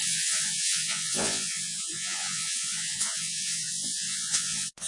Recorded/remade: remade